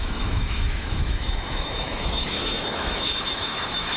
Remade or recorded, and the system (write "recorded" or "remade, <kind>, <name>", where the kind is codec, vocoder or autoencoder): remade, autoencoder, DAC-VAE